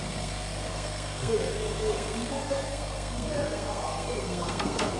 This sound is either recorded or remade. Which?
remade